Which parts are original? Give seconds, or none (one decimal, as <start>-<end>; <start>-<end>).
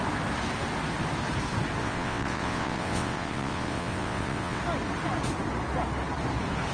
0.0-1.8; 4.6-6.7